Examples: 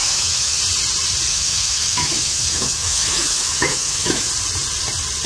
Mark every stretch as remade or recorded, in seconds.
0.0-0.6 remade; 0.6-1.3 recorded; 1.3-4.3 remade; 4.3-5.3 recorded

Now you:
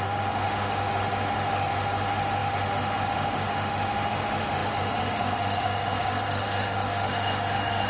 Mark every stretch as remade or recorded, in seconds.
0.0-7.9 remade